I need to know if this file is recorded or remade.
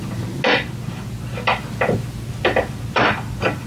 recorded